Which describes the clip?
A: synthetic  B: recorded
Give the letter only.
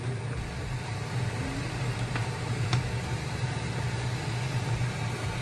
B